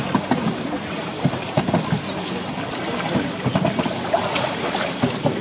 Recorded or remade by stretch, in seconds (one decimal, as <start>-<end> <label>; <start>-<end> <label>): 0.0-5.4 recorded